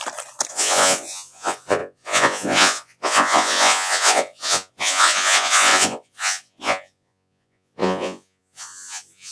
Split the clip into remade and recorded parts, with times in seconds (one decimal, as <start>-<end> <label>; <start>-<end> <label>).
0.0-0.5 recorded; 0.5-9.3 remade